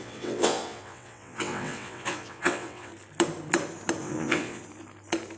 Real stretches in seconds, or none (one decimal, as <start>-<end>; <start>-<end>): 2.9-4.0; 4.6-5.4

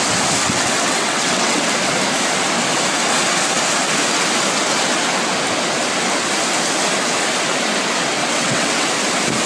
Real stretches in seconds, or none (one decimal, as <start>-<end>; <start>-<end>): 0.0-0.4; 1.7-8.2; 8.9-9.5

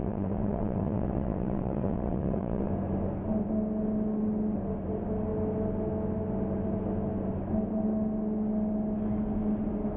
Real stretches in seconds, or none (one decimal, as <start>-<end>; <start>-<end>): 2.7-10.0

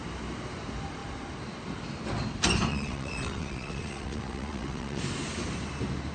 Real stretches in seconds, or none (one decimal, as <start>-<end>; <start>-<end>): 0.0-2.7; 5.0-6.1